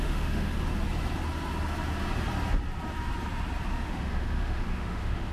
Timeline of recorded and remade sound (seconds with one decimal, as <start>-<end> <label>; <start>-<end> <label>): 0.0-0.5 remade; 0.5-3.7 recorded; 3.7-5.3 remade